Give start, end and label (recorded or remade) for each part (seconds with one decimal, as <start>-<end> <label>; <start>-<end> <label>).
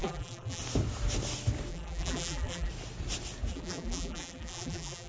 0.0-0.6 remade; 0.6-1.7 recorded; 1.7-2.7 remade; 2.7-3.5 recorded; 3.5-5.1 remade